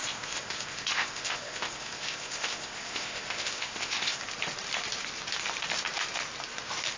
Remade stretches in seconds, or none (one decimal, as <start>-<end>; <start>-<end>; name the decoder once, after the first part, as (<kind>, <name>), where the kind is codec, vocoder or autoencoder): 0.0-4.2 (codec, ZipCodec)